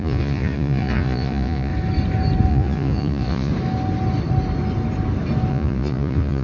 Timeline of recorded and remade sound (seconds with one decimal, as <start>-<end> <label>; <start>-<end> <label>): 0.0-1.7 remade; 1.7-2.5 recorded; 2.5-3.5 remade; 3.5-5.5 recorded; 5.5-6.4 remade